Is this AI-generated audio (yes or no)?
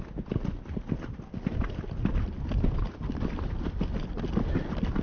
no